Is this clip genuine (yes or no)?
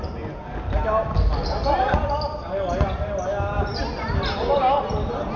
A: yes